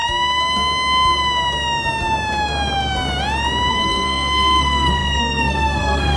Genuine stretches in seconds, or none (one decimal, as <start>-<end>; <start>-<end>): 0.0-3.7